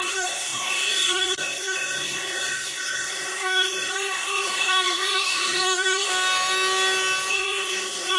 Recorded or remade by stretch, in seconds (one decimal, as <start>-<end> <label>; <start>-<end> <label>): 0.0-6.1 remade; 6.1-7.3 recorded; 7.3-8.2 remade